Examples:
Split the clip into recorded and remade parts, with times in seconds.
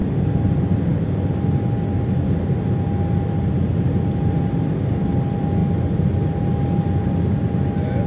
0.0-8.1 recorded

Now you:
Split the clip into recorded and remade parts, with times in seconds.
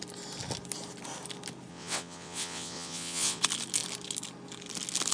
0.0-1.7 recorded; 1.7-3.4 remade; 3.4-5.1 recorded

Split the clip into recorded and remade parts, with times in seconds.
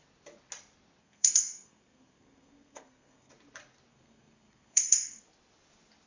0.0-1.0 recorded; 1.0-3.3 remade; 3.3-3.9 recorded; 3.9-5.2 remade; 5.2-6.1 recorded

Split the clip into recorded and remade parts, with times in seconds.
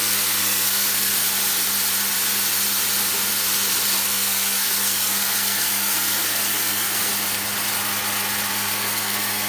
0.0-1.1 remade; 1.1-4.0 recorded; 4.0-7.1 remade; 7.1-8.5 recorded; 8.5-9.5 remade